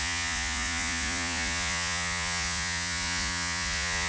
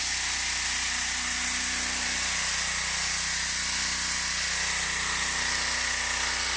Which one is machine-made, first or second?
first